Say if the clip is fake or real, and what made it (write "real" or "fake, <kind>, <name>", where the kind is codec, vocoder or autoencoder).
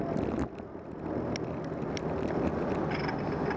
real